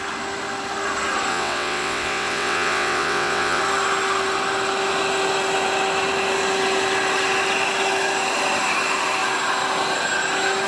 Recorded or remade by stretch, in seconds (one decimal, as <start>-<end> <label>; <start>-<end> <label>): 0.0-1.3 recorded; 1.3-3.6 remade; 3.6-10.7 recorded